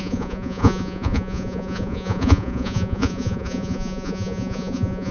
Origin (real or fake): fake